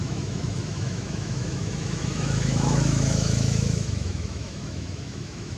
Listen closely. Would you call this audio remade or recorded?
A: remade